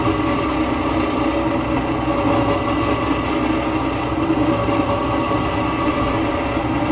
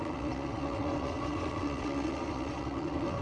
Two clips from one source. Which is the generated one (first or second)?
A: second